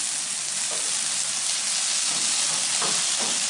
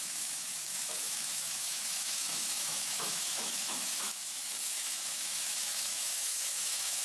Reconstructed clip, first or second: second